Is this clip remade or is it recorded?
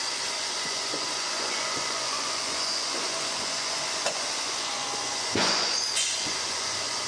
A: remade